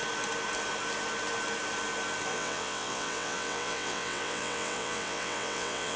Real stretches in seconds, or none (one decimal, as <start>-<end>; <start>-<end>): 0.0-2.3